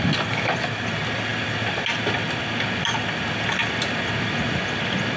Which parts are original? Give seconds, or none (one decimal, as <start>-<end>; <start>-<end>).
0.0-5.2

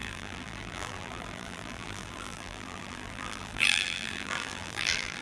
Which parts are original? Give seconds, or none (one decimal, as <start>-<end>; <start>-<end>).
none

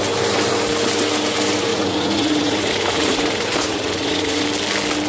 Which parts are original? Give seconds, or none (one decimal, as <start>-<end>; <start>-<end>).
0.0-1.7; 4.4-5.1

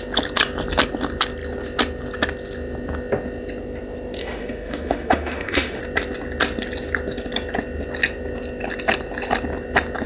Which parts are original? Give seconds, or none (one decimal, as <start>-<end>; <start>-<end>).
0.0-4.2; 5.8-10.1